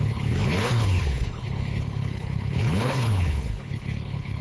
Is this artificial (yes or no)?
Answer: yes